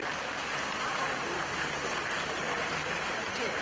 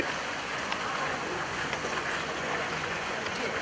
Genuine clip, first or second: first